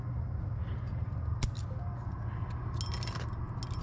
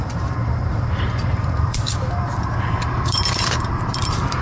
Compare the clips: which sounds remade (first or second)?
second